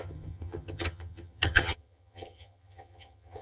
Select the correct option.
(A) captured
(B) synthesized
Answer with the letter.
B